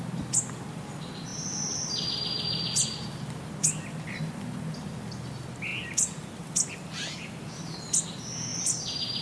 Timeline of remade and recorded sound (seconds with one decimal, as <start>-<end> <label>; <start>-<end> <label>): 0.0-9.2 recorded